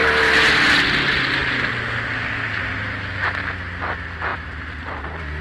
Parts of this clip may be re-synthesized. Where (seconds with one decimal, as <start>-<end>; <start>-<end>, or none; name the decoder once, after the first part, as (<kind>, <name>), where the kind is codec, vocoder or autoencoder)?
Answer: 4.3-5.0 (vocoder, BigVGAN v2)